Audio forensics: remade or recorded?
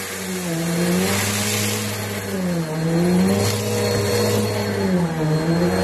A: recorded